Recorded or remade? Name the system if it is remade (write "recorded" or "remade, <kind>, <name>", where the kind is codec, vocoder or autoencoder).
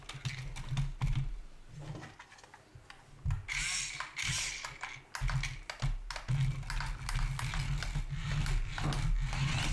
recorded